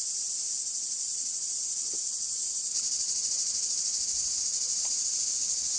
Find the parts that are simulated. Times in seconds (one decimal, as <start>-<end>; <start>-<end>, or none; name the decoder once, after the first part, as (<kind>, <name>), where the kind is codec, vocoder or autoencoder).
2.3-4.0 (vocoder, BigVGAN v2)